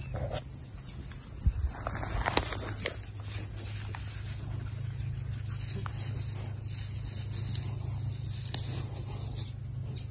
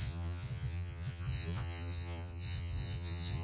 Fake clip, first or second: second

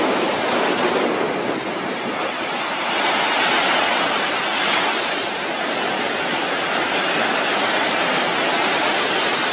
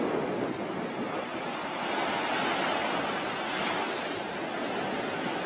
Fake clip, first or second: first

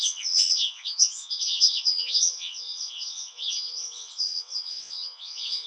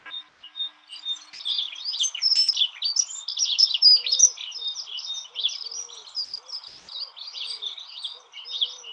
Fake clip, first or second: first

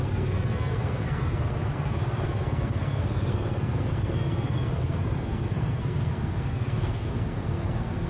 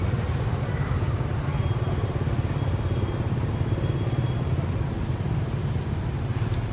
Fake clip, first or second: first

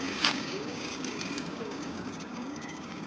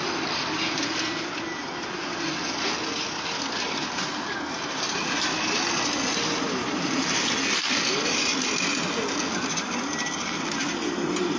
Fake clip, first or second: first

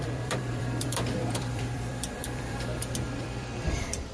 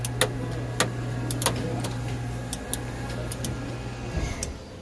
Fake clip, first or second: first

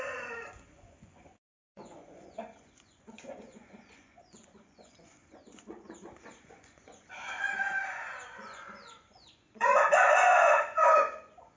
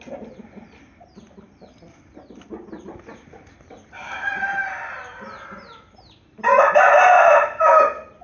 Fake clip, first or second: first